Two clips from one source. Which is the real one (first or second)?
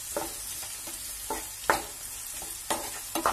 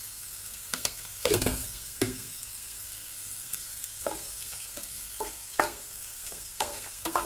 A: first